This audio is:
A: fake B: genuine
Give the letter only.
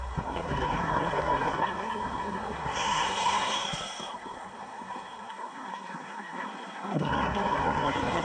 A